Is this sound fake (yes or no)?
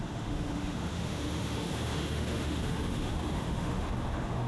yes